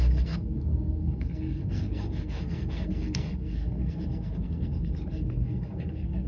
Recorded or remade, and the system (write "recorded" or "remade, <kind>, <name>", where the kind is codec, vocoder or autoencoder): remade, codec, SNAC